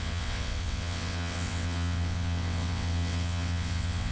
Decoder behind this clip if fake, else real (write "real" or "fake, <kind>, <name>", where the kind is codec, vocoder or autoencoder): fake, vocoder, WaveNeXt